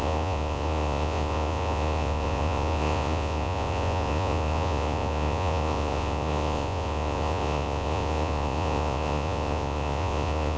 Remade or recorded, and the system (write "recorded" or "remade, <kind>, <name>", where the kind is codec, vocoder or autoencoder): remade, vocoder, Vocos